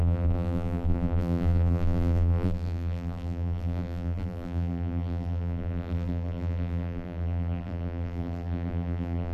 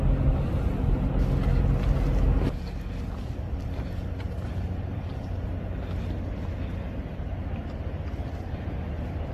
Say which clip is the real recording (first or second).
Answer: second